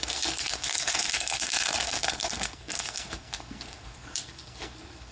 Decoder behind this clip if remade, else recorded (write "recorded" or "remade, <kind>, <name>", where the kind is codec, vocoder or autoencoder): remade, codec, SNAC